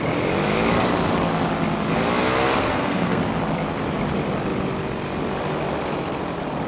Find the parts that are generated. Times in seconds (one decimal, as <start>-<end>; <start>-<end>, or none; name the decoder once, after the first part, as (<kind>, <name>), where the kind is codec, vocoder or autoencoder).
2.6-3.2 (codec, SNAC)